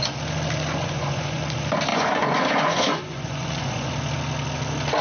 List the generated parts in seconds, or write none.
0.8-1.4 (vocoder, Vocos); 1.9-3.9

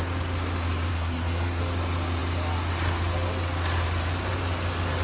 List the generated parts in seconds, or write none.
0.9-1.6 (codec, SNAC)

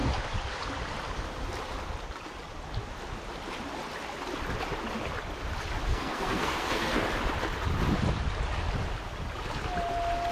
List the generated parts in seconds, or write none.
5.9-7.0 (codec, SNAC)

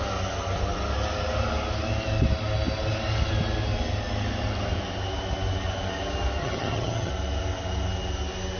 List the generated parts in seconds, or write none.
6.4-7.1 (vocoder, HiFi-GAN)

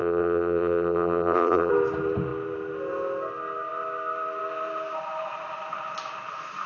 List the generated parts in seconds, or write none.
0.0-1.7 (vocoder, BigVGAN v2)

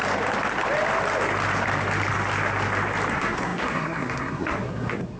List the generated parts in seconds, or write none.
3.1-5.2 (codec, SNAC)